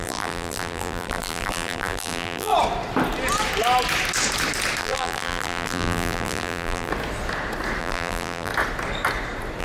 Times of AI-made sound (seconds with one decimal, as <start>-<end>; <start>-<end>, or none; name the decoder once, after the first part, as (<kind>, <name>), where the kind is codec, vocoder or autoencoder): 0.0-2.5 (vocoder, BigVGAN v2); 4.8-6.9; 7.8-8.5